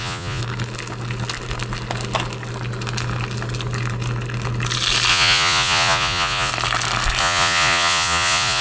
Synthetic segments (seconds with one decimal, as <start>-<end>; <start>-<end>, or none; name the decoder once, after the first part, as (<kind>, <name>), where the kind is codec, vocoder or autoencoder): 0.0-0.4 (vocoder, Vocos); 5.1-6.5; 7.2-8.6